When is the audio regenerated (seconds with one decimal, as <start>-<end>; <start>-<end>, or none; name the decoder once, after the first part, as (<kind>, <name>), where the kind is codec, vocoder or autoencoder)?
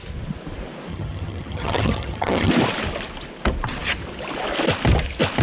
0.9-2.5 (vocoder, HiFi-GAN)